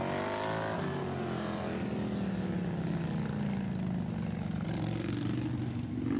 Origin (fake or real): real